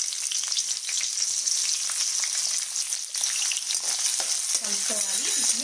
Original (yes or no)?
yes